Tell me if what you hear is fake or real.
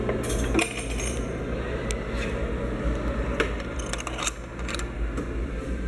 real